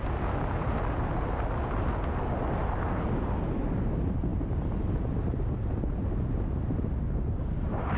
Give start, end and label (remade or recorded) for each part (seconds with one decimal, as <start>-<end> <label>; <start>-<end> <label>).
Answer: 0.0-8.0 recorded